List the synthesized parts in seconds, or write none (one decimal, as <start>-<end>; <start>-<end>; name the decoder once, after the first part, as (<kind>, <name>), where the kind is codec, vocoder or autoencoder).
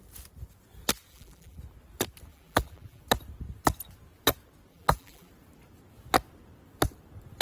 1.1-1.6 (vocoder, BigVGAN v2); 2.3-3.0; 4.7-5.3